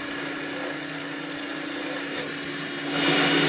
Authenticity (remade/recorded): recorded